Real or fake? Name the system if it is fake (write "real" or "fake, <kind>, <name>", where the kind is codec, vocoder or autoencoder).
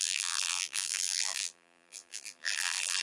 fake, vocoder, BigVGAN v2